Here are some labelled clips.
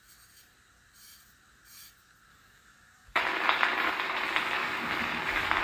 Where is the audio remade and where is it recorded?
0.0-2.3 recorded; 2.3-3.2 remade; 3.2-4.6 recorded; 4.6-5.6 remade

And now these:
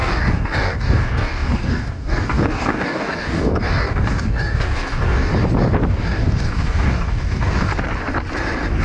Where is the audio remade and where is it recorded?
0.0-5.3 remade; 5.3-5.9 recorded; 5.9-7.7 remade; 7.7-8.8 recorded

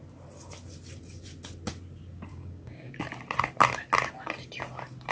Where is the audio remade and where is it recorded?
0.0-2.3 recorded; 2.3-2.9 remade; 2.9-5.1 recorded

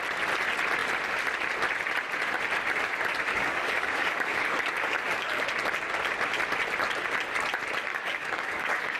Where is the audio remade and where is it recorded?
0.0-3.3 recorded; 3.3-5.4 remade; 5.4-7.9 recorded; 7.9-9.0 remade

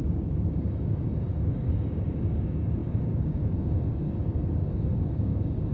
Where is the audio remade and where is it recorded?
0.0-5.7 remade

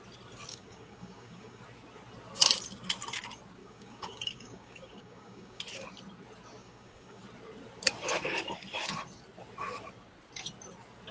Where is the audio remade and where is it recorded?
0.0-0.5 recorded; 0.5-1.6 remade; 1.6-3.6 recorded; 3.6-5.6 remade; 5.6-6.6 recorded; 6.6-7.2 remade; 7.2-11.1 recorded

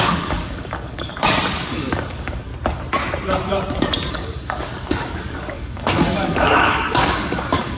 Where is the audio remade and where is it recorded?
0.0-1.1 remade; 1.1-1.7 recorded; 1.7-2.5 remade; 2.5-4.1 recorded; 4.1-7.8 remade

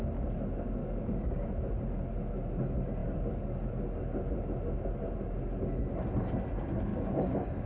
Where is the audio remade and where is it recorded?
0.0-0.8 recorded; 0.8-1.5 remade; 1.5-6.9 recorded; 6.9-7.7 remade